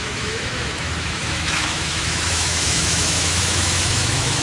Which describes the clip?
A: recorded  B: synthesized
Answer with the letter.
B